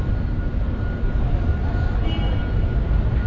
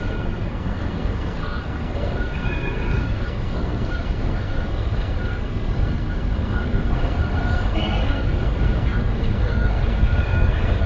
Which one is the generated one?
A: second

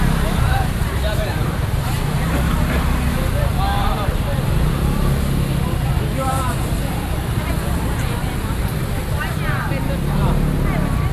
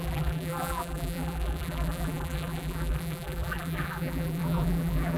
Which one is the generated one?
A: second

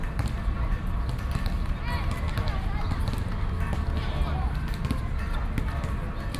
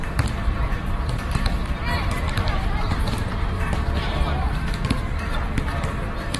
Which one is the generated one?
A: second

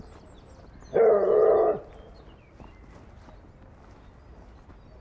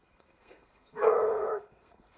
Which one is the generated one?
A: second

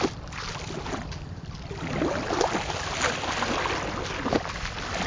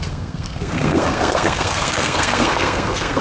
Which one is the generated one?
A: second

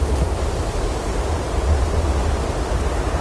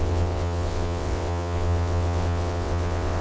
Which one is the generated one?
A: second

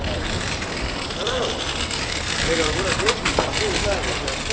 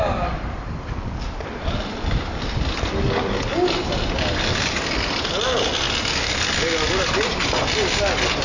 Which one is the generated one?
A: first